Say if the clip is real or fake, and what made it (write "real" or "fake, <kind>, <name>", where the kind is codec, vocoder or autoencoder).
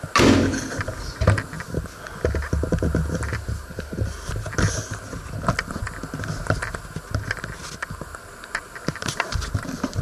real